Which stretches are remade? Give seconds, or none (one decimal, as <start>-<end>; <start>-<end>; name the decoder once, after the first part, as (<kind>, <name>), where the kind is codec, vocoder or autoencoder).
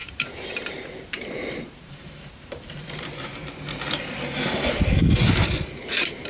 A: 0.0-3.8 (vocoder, BigVGAN v2)